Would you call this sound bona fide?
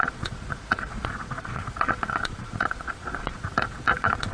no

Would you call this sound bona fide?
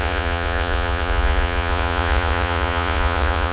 no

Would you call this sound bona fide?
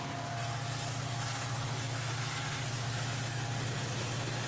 yes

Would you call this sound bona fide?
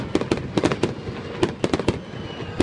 yes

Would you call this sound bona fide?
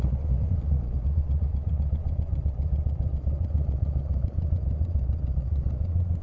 no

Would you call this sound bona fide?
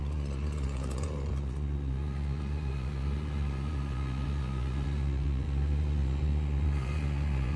no